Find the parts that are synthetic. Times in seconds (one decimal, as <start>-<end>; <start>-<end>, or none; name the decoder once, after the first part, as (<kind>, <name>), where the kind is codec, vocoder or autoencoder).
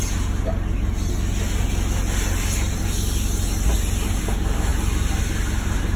none